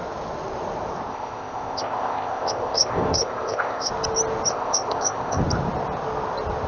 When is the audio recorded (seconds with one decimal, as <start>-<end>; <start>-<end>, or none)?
0.0-1.1; 3.9-4.5; 5.4-6.7